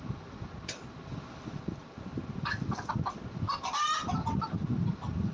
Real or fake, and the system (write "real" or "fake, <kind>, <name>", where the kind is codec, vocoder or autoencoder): real